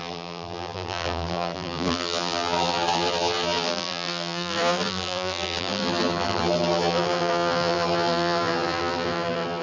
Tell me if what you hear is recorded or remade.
remade